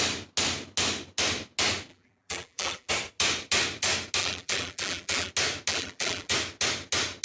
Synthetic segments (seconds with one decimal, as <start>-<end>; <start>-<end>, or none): 1.9-2.9; 4.2-5.3; 5.7-6.3